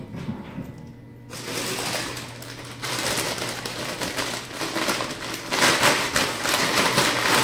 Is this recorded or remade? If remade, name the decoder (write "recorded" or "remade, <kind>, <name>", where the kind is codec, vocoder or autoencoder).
recorded